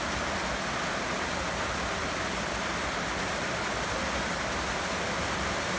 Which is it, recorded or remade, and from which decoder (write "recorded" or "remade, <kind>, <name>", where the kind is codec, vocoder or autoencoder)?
recorded